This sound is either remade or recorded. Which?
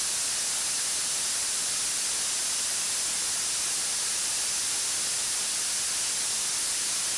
recorded